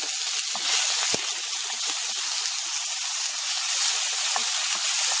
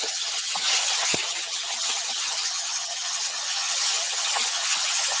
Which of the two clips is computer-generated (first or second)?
second